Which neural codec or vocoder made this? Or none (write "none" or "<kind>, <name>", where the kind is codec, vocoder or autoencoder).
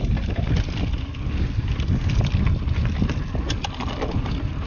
none